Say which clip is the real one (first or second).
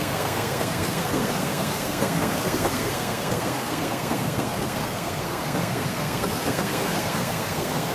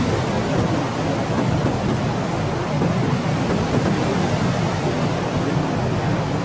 second